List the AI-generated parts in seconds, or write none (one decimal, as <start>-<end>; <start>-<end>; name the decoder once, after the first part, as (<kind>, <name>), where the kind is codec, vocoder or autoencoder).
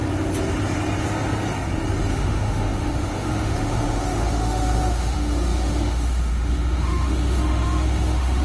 2.1-8.4 (autoencoder, DAC-VAE)